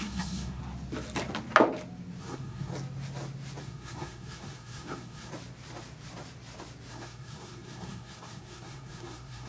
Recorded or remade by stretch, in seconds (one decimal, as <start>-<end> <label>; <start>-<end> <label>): 0.0-0.6 remade; 0.6-2.2 recorded; 2.2-2.7 remade; 2.7-3.6 recorded; 3.6-5.3 remade; 5.3-6.9 recorded; 6.9-9.5 remade